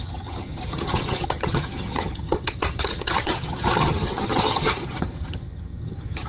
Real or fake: fake